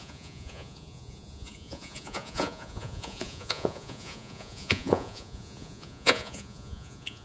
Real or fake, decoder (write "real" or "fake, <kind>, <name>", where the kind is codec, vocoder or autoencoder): fake, vocoder, Vocos